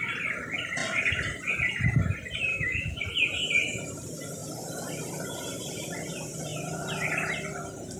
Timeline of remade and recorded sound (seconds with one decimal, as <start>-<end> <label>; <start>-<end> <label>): 0.0-2.5 recorded; 2.5-3.0 remade; 3.0-8.0 recorded